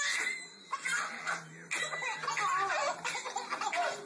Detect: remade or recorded recorded